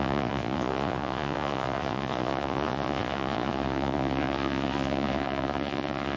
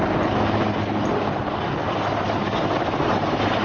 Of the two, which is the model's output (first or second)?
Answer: first